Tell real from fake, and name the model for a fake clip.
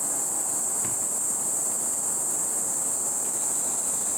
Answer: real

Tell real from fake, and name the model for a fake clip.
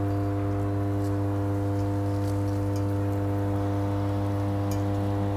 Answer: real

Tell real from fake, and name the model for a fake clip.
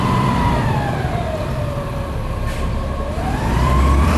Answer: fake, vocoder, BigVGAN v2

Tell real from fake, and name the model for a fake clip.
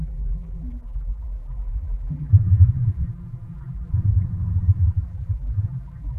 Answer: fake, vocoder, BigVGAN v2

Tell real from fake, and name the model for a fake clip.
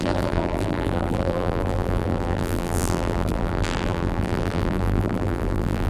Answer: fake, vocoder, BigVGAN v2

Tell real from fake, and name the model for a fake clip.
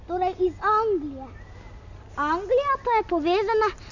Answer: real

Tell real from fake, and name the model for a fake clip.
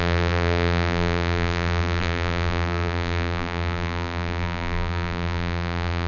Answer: fake, vocoder, BigVGAN v2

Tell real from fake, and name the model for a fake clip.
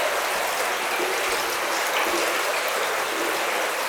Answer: fake, vocoder, BigVGAN v2